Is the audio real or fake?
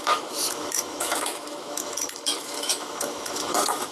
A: fake